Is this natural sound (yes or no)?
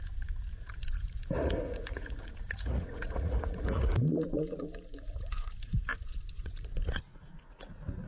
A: no